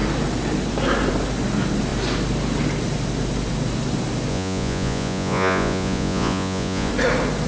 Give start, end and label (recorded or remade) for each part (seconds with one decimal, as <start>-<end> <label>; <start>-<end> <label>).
0.0-4.3 recorded; 4.3-6.9 remade; 6.9-7.5 recorded